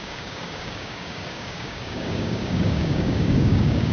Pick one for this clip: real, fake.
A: fake